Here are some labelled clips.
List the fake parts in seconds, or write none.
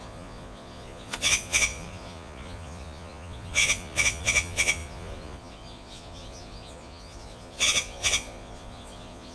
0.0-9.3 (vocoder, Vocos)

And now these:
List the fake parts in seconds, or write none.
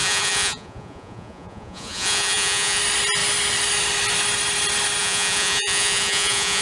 0.0-2.8 (vocoder, Vocos); 5.0-6.6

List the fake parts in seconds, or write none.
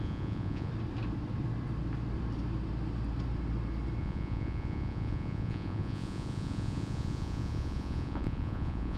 0.0-0.7 (vocoder, Vocos); 4.0-9.0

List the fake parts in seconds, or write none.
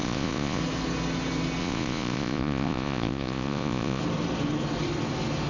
0.0-0.6 (vocoder, Vocos); 1.6-4.0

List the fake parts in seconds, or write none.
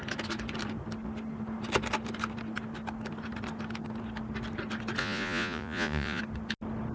5.0-6.2 (vocoder, Vocos)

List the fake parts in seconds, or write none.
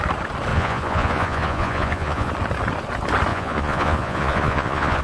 0.5-2.3 (vocoder, Vocos); 3.3-5.0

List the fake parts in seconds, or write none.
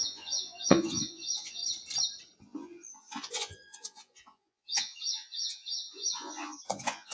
0.0-1.6 (vocoder, Vocos); 2.4-7.1